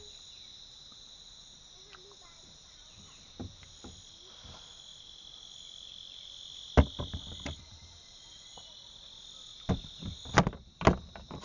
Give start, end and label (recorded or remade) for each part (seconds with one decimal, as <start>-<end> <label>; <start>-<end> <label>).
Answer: 0.0-11.4 recorded